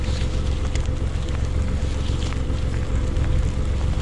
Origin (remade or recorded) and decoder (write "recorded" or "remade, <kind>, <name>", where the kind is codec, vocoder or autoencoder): recorded